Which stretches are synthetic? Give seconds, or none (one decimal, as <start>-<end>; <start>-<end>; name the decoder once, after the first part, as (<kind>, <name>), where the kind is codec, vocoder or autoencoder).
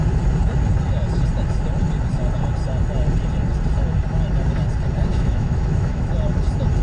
5.1-6.1 (autoencoder, DAC-VAE)